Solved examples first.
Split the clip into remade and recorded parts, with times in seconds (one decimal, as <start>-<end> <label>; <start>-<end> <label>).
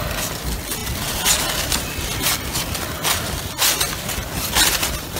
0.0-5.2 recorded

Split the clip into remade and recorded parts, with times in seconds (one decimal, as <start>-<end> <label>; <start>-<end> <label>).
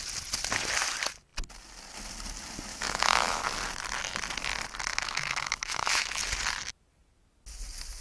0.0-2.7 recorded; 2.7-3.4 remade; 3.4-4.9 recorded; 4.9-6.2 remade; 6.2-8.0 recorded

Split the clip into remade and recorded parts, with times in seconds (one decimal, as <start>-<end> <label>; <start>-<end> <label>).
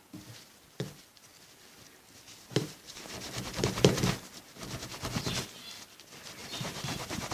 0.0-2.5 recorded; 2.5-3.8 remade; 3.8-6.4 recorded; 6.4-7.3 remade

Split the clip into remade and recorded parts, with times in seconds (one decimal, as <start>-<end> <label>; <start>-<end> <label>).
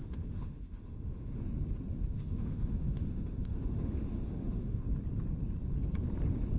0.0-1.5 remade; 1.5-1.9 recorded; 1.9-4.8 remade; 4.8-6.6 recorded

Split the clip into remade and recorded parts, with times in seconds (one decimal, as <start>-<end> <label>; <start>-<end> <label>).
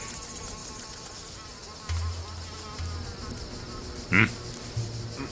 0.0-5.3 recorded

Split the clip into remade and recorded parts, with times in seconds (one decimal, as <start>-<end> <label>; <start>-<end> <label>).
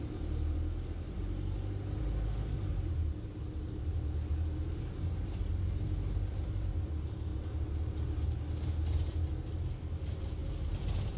0.0-2.7 remade; 2.7-3.9 recorded; 3.9-7.3 remade; 7.3-8.0 recorded; 8.0-11.2 remade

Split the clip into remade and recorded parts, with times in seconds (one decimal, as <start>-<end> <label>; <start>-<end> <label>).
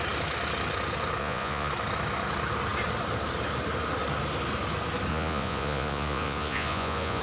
0.0-1.2 recorded; 1.2-1.7 remade; 1.7-5.1 recorded; 5.1-7.2 remade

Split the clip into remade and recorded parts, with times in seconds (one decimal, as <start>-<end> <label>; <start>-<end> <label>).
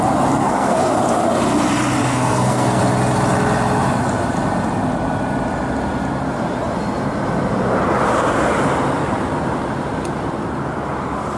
0.0-0.4 recorded; 0.4-0.9 remade; 0.9-2.0 recorded; 2.0-2.8 remade; 2.8-11.4 recorded